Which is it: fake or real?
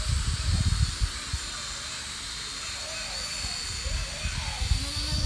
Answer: real